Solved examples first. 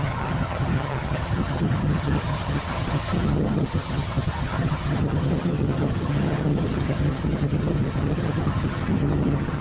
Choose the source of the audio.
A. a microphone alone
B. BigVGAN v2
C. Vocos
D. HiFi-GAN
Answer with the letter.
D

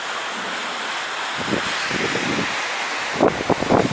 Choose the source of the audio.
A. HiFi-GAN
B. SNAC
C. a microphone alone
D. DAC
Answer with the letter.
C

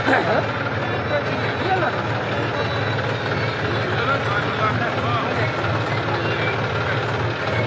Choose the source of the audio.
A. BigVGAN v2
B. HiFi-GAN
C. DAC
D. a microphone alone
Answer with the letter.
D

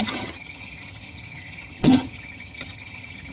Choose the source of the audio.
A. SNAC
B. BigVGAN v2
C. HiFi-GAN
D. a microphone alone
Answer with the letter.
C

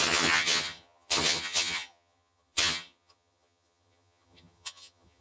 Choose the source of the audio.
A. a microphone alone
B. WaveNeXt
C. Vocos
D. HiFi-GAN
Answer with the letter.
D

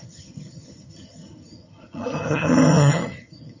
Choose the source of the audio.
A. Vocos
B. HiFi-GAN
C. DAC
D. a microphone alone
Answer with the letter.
B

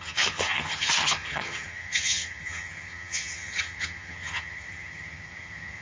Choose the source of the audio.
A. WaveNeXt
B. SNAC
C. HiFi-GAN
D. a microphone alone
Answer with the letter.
C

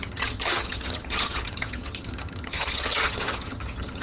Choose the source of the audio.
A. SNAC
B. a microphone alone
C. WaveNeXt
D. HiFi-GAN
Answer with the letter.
D